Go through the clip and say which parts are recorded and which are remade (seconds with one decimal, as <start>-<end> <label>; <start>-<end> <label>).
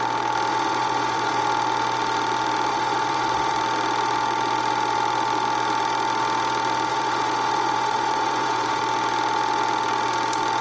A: 0.0-0.5 recorded; 0.5-1.4 remade; 1.4-2.7 recorded; 2.7-3.5 remade; 3.5-6.9 recorded; 6.9-8.8 remade; 8.8-10.6 recorded